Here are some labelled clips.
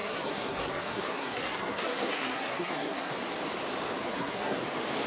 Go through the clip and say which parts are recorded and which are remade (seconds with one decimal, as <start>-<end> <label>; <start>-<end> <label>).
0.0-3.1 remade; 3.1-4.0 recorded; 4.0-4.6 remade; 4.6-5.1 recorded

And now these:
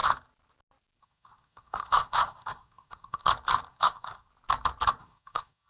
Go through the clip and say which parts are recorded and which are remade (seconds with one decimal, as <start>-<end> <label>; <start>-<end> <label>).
0.0-1.0 recorded; 1.0-3.3 remade; 3.3-3.7 recorded; 3.7-4.3 remade; 4.3-5.0 recorded; 5.0-5.7 remade

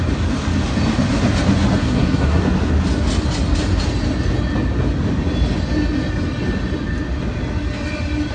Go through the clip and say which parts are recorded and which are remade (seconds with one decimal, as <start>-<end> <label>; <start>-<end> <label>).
0.0-1.8 recorded; 1.8-2.4 remade; 2.4-8.3 recorded

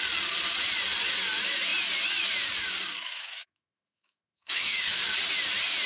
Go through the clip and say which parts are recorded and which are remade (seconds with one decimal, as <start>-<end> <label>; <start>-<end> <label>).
0.0-3.0 recorded; 3.0-5.0 remade; 5.0-5.9 recorded

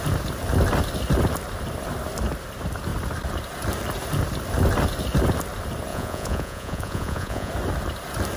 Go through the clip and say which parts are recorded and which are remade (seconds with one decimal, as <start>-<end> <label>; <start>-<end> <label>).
0.0-5.9 recorded; 5.9-7.5 remade; 7.5-8.4 recorded